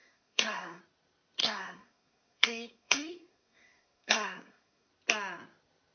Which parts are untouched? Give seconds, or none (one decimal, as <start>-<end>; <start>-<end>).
0.8-1.4; 4.9-5.9

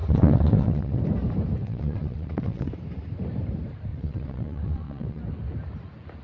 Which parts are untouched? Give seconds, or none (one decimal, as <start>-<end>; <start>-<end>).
1.0-1.6; 2.7-3.9; 5.2-6.2

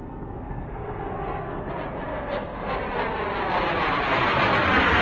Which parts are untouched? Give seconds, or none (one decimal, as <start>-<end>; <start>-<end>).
1.7-2.1; 2.8-5.0

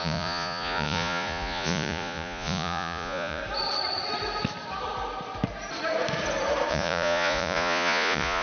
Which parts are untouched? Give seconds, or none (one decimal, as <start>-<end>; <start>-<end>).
3.4-6.7